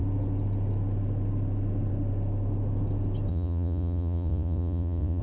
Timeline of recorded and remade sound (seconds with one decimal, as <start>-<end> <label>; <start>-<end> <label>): 0.0-3.3 recorded; 3.3-5.2 remade